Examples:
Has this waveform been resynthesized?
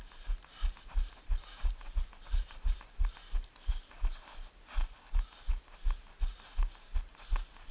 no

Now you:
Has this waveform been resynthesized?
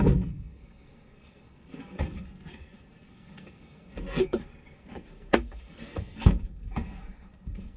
yes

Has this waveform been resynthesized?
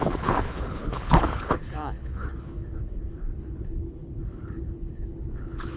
yes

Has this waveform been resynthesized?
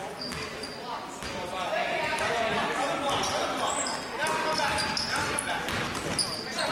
no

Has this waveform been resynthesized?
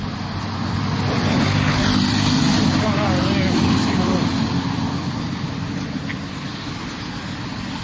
no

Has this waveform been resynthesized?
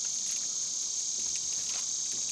no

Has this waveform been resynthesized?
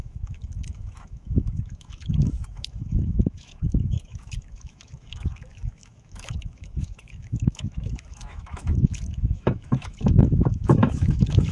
yes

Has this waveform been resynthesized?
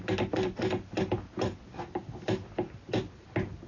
no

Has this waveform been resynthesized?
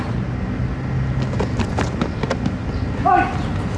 no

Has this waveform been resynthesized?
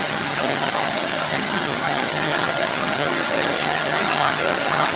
yes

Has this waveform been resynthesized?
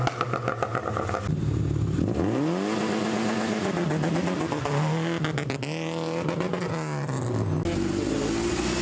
no